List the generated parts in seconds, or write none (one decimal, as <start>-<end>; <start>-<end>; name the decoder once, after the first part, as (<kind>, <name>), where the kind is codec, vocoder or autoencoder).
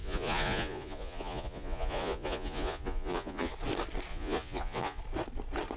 0.0-3.5 (vocoder, Vocos); 4.1-5.0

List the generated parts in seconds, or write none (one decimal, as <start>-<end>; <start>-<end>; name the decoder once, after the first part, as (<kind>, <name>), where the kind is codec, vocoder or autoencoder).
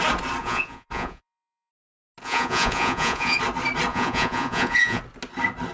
0.4-1.7 (vocoder, Vocos); 2.2-3.4; 3.9-5.0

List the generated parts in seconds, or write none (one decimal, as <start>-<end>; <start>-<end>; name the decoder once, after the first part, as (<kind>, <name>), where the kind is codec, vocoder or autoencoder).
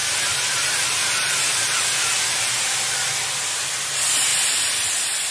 none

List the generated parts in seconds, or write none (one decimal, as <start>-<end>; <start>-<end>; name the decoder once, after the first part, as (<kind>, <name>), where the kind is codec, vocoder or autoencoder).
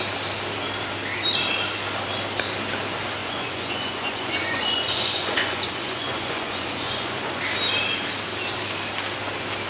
3.2-7.4 (vocoder, Vocos)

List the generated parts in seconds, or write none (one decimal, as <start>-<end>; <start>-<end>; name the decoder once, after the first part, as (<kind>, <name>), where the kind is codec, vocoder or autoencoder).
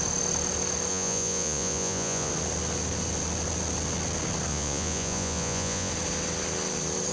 0.9-2.3 (vocoder, Vocos); 4.5-5.9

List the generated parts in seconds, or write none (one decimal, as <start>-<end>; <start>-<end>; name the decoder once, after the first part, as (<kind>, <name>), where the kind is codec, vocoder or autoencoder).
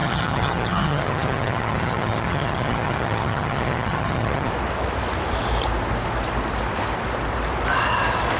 0.0-4.5 (vocoder, HiFi-GAN)